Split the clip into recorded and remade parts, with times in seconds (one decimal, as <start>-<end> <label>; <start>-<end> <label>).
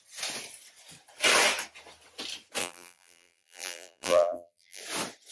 0.0-2.6 recorded; 2.6-4.8 remade; 4.8-5.3 recorded